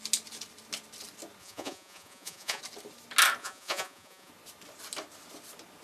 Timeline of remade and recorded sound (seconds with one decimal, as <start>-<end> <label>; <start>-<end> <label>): 0.0-1.4 recorded; 1.4-2.6 remade; 2.6-3.4 recorded; 3.4-4.3 remade; 4.3-5.8 recorded